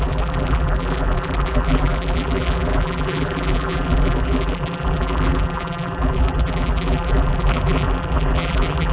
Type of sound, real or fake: fake